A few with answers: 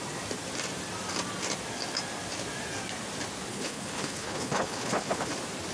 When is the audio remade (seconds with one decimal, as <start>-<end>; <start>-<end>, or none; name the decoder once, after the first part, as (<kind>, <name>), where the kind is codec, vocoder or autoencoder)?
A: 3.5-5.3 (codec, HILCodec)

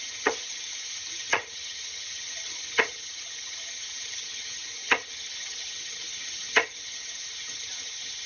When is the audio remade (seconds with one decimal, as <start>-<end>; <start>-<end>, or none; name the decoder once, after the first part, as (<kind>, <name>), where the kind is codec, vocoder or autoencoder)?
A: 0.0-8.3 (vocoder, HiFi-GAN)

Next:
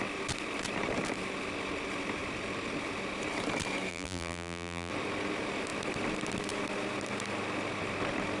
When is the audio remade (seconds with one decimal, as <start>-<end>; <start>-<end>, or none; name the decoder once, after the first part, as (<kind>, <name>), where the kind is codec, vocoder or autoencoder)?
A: 3.9-4.9 (vocoder, BigVGAN v2)